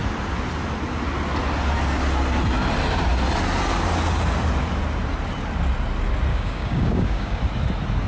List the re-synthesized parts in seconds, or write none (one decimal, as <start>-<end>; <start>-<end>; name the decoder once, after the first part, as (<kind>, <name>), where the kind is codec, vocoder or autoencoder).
6.3-7.4 (codec, DAC)